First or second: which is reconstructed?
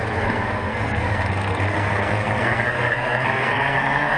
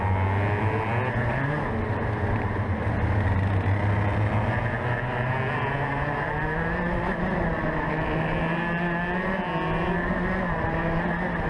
first